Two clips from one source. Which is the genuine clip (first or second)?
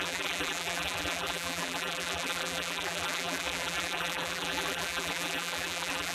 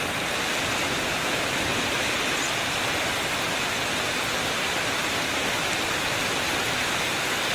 second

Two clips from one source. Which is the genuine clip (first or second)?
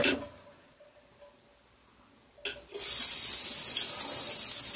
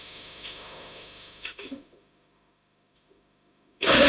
first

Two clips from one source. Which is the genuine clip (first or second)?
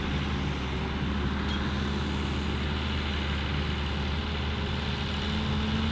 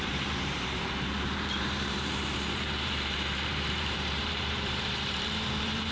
first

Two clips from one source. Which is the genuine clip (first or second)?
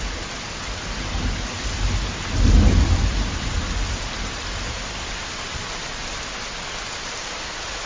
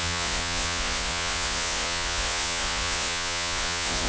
first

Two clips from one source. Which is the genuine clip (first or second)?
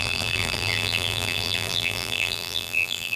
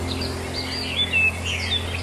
second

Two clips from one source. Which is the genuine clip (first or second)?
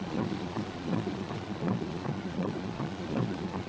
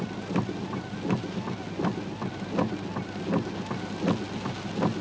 second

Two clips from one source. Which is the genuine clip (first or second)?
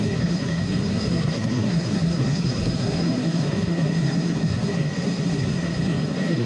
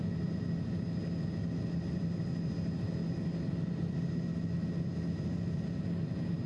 second